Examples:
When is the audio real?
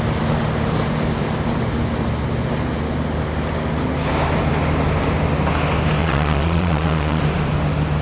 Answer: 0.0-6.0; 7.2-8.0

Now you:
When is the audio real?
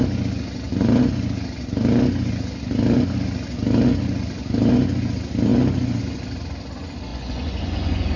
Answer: 0.0-7.1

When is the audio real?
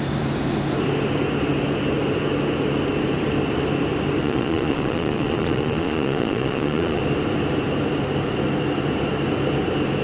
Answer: 0.0-4.2; 7.0-10.0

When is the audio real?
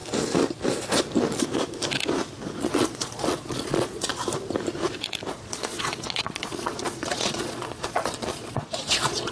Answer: 0.0-2.6; 4.1-5.3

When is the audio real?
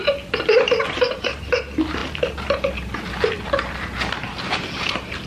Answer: 0.0-5.3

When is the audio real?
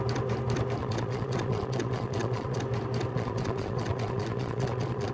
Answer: 0.0-0.8; 2.6-3.1